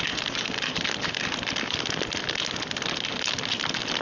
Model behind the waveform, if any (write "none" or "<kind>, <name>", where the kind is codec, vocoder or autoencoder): vocoder, BigVGAN v2